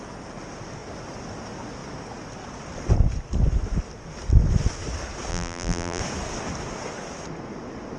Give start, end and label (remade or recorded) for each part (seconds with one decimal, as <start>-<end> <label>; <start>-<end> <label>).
0.0-5.3 recorded; 5.3-6.0 remade; 6.0-8.0 recorded